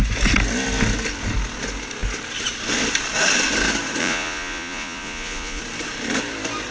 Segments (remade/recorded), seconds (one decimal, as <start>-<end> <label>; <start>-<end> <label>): 0.0-4.0 recorded; 4.0-5.6 remade; 5.6-6.7 recorded